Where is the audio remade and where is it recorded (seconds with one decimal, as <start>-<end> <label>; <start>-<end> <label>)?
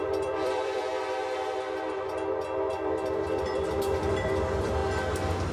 0.0-0.9 remade; 0.9-2.7 recorded; 2.7-4.8 remade; 4.8-5.5 recorded